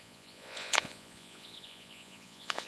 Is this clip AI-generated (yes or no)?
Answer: yes